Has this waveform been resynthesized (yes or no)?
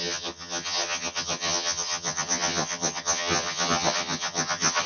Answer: yes